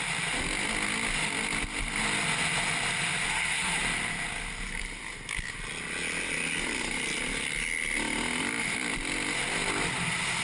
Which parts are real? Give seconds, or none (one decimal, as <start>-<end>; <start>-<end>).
0.0-3.3; 3.8-10.4